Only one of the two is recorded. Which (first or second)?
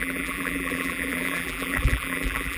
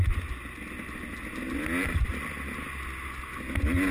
second